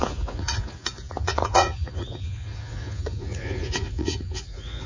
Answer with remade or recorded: remade